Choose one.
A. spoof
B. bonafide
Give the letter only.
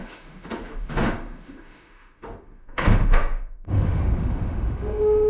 A